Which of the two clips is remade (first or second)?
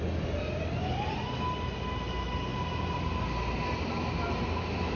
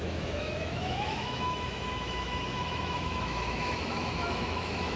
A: second